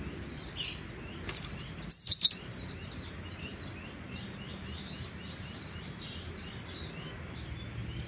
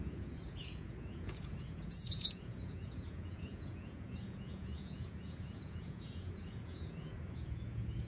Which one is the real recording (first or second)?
first